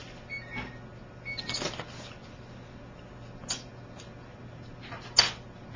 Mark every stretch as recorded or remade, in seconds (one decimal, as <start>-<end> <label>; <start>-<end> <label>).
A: 0.0-5.8 recorded